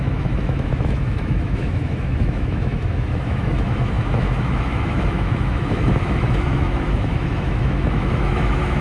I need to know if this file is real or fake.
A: fake